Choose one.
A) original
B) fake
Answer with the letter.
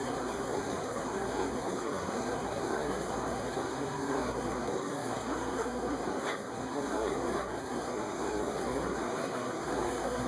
B